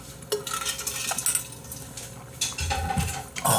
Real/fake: real